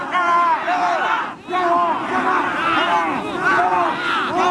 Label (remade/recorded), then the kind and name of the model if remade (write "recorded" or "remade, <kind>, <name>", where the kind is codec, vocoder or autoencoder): recorded